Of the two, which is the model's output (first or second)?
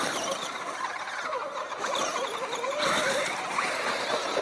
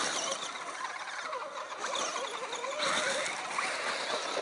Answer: first